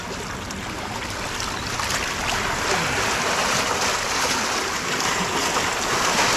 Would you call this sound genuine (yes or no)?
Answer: yes